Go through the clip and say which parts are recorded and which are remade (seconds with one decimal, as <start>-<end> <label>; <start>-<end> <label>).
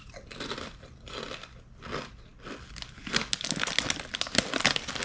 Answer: 0.0-5.0 recorded